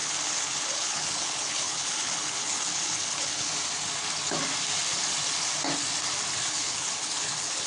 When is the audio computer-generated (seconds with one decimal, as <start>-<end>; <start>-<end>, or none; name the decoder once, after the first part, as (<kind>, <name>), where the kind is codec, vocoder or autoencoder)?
0.0-3.5 (codec, HILCodec); 6.4-7.7